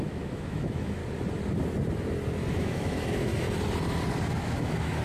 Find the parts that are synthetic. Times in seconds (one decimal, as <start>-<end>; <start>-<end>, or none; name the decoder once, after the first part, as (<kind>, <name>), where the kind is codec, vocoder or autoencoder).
0.0-1.0 (autoencoder, DAC-VAE); 2.5-3.3; 4.3-5.0